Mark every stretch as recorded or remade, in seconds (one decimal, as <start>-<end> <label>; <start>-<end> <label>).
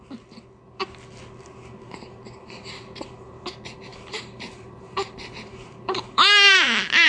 0.0-3.9 recorded; 3.9-7.1 remade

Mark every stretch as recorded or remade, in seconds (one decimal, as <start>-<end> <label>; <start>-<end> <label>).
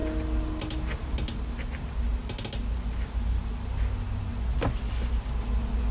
0.0-5.9 recorded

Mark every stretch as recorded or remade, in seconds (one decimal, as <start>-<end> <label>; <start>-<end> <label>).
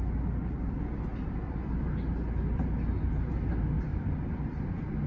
0.0-5.1 recorded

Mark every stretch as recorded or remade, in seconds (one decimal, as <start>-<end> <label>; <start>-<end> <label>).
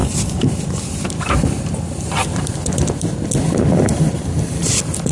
0.0-3.1 remade; 3.1-5.1 recorded